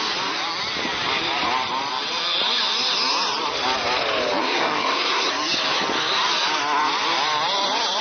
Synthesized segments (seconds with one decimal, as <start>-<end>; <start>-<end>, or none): 4.4-5.3